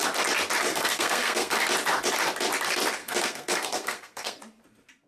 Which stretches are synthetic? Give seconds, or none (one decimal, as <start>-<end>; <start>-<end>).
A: 0.7-1.6; 3.0-4.4